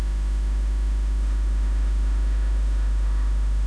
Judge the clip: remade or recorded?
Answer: remade